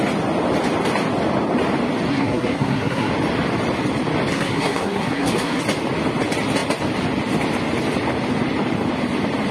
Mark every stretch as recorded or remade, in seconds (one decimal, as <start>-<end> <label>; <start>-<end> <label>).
0.0-2.1 recorded; 2.1-3.1 remade; 3.1-4.3 recorded; 4.3-5.6 remade; 5.6-9.5 recorded